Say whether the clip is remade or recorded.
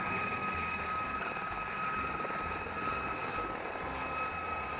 recorded